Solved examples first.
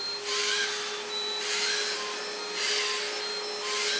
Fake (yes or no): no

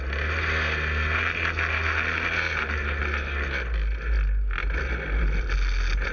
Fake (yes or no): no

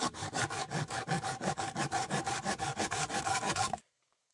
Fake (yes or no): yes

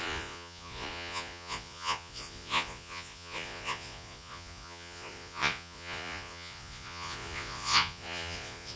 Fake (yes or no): yes